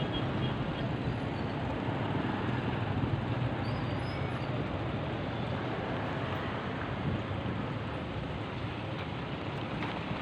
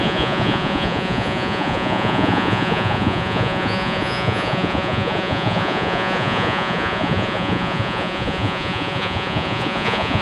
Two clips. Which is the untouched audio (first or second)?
first